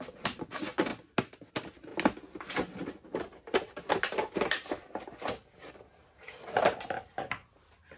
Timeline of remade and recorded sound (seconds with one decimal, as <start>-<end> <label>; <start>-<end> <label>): 0.0-0.9 remade; 0.9-1.5 recorded; 1.5-1.9 remade; 1.9-5.7 recorded; 5.7-8.0 remade